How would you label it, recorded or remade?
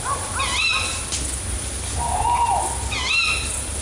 recorded